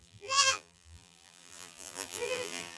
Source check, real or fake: fake